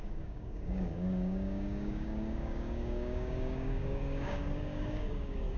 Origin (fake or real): fake